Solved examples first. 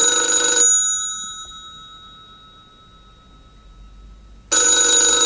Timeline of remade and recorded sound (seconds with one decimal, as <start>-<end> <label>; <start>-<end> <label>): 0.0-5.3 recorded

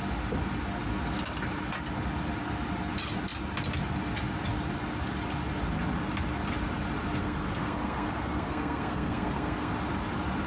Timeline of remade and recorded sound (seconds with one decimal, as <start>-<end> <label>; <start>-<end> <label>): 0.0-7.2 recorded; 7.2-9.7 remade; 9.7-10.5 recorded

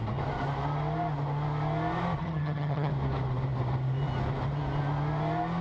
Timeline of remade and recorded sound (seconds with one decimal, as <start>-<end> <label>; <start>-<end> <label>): 0.0-2.2 recorded; 2.2-2.9 remade; 2.9-5.6 recorded

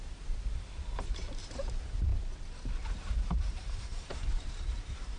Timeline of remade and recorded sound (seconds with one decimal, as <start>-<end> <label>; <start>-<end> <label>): 0.0-2.1 remade; 2.1-2.8 recorded; 2.8-5.2 remade

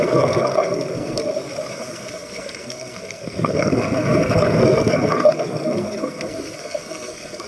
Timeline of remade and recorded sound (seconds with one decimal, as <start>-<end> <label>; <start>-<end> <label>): 0.0-1.2 remade; 1.2-1.7 recorded; 1.7-7.5 remade